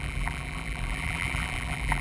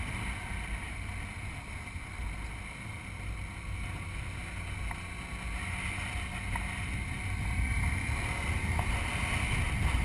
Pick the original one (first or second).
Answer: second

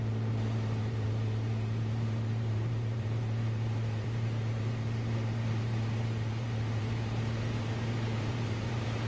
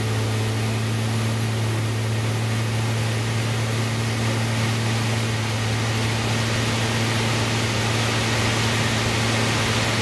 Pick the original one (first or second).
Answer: second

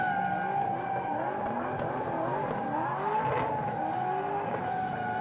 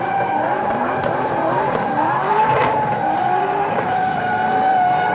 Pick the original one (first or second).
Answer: first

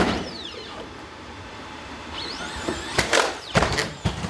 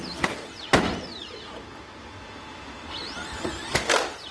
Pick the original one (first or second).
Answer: second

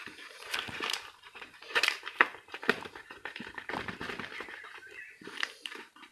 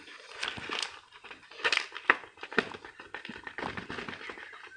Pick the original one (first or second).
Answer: second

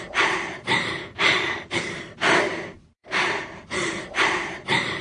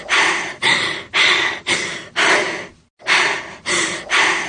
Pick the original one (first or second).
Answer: second